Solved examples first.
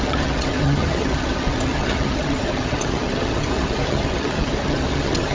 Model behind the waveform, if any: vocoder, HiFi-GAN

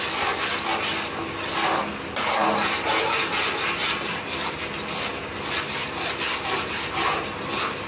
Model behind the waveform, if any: none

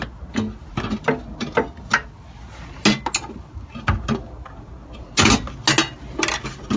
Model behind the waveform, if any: none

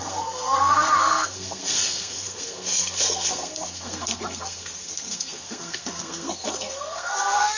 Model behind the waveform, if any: codec, SNAC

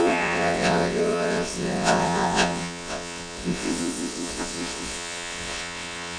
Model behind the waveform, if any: vocoder, WaveNeXt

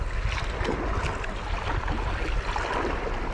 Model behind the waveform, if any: none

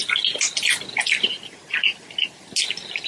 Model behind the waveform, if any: none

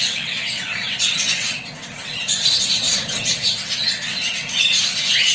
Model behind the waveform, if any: vocoder, WaveNeXt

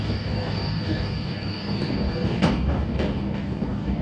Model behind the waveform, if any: codec, DAC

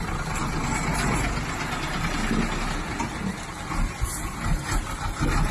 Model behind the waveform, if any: none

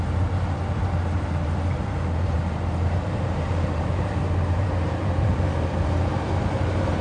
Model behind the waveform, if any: vocoder, BigVGAN v2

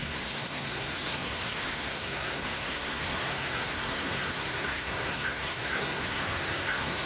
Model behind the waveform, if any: codec, SNAC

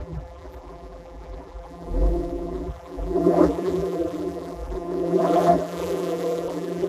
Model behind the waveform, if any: vocoder, BigVGAN v2